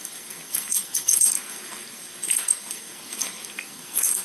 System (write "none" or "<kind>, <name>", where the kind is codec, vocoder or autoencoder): codec, SNAC